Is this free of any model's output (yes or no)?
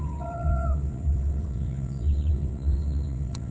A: no